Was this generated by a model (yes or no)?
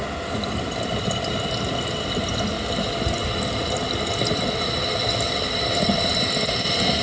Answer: no